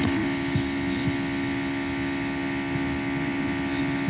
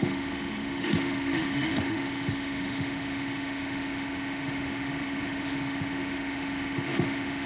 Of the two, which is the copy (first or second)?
second